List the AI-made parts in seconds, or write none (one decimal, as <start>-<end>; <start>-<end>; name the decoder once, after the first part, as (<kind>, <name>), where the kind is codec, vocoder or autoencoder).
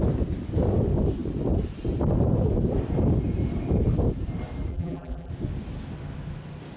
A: 4.7-5.3 (vocoder, BigVGAN v2)